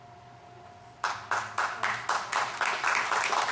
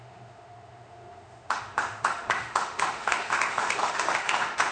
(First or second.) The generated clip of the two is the second